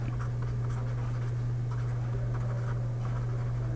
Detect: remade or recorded recorded